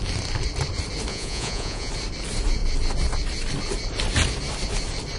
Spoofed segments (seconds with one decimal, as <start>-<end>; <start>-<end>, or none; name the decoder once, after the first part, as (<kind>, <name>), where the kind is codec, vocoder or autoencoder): 1.1-1.9 (vocoder, Vocos)